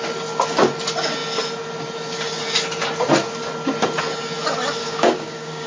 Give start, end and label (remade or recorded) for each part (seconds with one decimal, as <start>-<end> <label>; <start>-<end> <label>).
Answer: 0.0-4.8 recorded; 4.8-5.7 remade